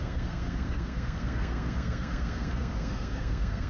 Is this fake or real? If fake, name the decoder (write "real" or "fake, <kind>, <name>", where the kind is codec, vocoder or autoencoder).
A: fake, codec, SNAC